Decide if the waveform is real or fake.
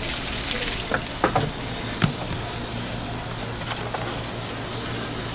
real